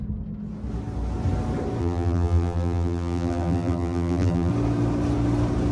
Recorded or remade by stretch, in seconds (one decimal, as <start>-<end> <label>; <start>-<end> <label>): 0.0-1.8 recorded; 1.8-4.5 remade; 4.5-5.7 recorded